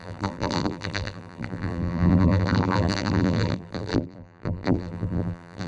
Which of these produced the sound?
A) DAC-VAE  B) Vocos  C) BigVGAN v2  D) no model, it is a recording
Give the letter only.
C